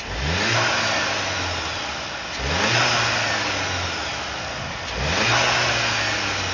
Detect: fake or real real